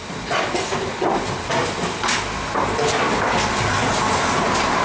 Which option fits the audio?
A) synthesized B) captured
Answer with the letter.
B